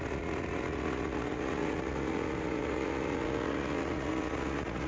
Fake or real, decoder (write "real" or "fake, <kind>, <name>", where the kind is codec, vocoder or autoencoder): fake, vocoder, Vocos